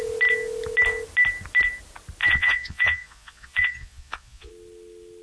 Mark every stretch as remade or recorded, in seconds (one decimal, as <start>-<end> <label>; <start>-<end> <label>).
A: 0.0-2.2 recorded; 2.2-4.5 remade; 4.5-5.2 recorded